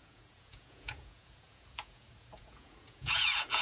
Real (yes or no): no